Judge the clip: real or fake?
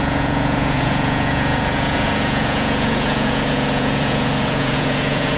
fake